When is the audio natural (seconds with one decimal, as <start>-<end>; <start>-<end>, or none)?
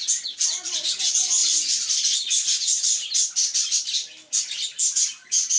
0.0-5.6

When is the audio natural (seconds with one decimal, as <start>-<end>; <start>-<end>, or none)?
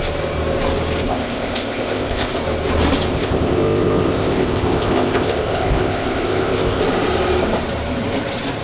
0.0-1.1; 2.3-3.1; 6.8-8.6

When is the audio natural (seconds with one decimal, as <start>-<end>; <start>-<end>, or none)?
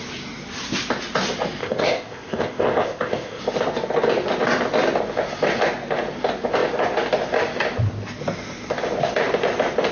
0.0-1.6; 3.4-9.9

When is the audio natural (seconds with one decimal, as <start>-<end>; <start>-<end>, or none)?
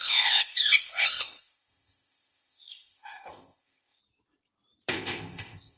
4.0-4.9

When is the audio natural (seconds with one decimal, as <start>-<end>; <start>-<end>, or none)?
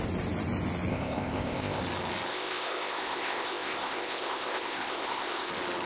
0.0-0.9; 1.8-2.3; 5.5-5.9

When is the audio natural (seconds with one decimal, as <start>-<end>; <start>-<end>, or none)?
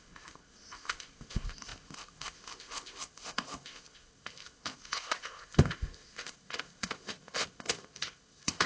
none